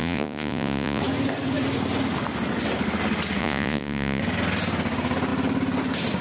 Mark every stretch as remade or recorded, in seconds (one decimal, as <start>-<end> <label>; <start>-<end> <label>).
0.0-1.0 remade; 1.0-3.4 recorded; 3.4-4.2 remade; 4.2-6.2 recorded